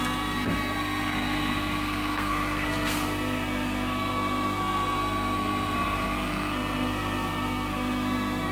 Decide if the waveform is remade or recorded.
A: remade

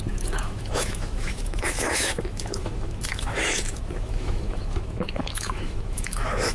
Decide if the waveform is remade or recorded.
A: remade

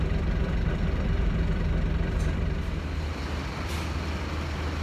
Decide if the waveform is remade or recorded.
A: recorded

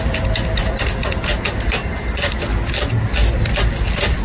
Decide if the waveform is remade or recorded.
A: recorded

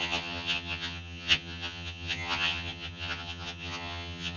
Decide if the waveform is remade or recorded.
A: remade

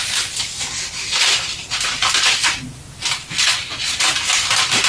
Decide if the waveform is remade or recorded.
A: recorded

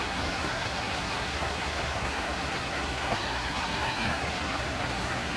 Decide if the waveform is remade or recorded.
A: remade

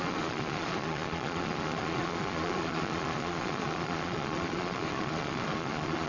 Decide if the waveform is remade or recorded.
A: remade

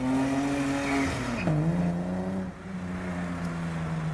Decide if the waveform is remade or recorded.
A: recorded